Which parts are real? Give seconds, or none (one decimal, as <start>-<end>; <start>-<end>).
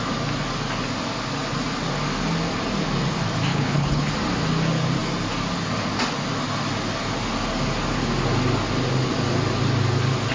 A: 0.0-3.5; 4.1-10.3